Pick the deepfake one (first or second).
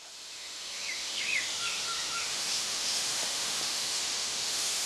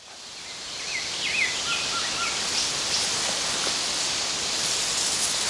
first